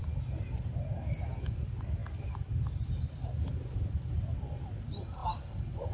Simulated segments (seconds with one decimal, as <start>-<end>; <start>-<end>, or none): none